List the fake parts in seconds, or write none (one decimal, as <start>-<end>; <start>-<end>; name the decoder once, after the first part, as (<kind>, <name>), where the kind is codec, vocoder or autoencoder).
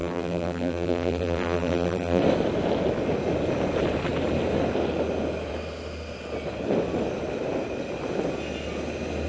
0.0-2.2 (vocoder, BigVGAN v2)